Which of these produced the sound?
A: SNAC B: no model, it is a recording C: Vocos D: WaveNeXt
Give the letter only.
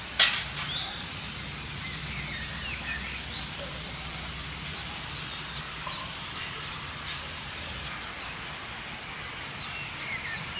B